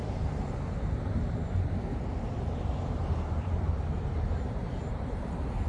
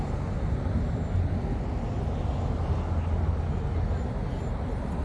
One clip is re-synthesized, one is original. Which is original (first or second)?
second